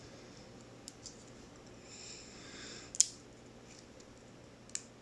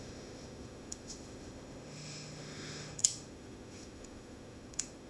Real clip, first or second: first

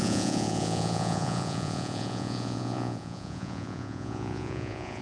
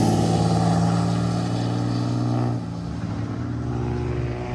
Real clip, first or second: second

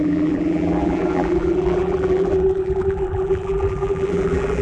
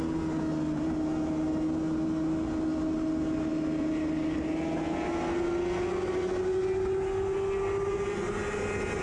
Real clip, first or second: second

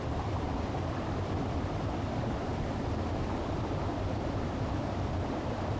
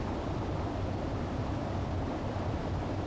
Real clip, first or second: second